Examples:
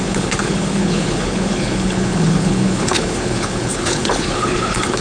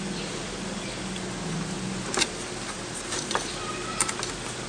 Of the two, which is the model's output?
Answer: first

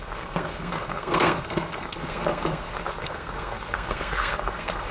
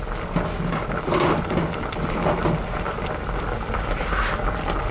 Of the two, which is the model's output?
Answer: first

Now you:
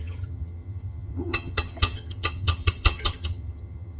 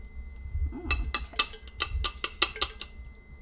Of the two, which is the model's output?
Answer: first